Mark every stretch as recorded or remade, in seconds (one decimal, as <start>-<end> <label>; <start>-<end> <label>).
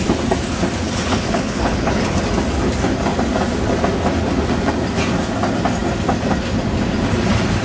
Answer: 0.0-0.8 recorded; 0.8-2.2 remade; 2.2-7.6 recorded